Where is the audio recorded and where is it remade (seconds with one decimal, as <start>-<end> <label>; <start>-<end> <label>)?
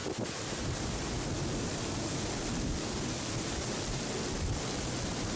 0.0-5.4 recorded